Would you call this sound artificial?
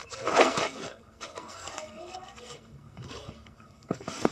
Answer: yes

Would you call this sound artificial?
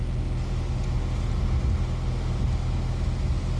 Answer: no